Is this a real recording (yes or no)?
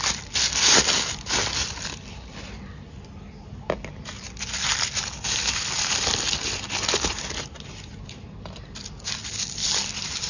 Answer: yes